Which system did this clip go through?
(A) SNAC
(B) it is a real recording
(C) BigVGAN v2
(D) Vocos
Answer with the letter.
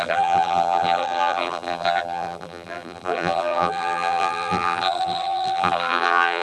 C